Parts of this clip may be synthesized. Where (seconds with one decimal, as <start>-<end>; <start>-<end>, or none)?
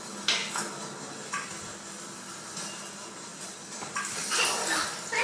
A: none